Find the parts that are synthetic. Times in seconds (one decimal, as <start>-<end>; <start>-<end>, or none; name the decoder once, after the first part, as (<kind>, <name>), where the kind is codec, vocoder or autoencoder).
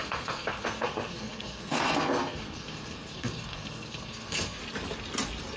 0.0-4.6 (codec, SNAC)